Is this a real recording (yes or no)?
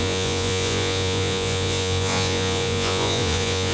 no